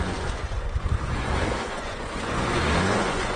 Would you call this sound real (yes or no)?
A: no